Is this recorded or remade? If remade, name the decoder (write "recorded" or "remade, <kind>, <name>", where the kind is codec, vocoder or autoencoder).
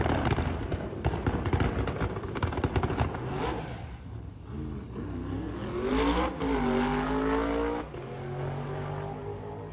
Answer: recorded